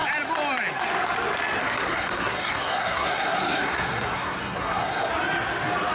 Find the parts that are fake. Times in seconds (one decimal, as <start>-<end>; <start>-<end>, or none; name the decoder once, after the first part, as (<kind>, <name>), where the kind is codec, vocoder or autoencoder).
1.6-5.1 (codec, SNAC)